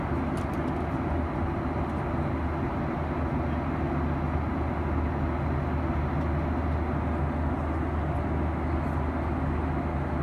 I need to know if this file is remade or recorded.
recorded